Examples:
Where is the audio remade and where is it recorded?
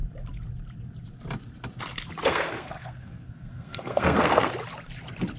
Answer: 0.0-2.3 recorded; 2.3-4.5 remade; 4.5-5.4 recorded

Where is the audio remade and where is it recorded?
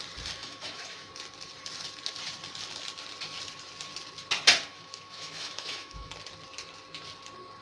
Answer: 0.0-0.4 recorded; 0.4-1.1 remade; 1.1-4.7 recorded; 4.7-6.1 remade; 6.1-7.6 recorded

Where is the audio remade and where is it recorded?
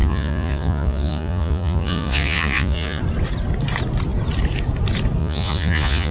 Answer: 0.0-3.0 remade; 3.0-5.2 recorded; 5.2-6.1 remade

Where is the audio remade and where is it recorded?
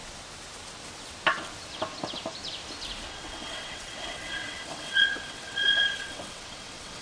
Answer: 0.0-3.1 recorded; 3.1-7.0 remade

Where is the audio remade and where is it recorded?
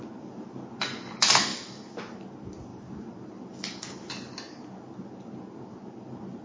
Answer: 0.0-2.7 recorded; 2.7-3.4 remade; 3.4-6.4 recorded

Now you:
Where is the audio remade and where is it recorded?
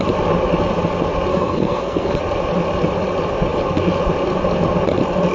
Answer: 0.0-1.3 recorded; 1.3-2.2 remade; 2.2-5.3 recorded